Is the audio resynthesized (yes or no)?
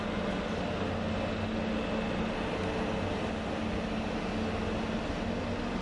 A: no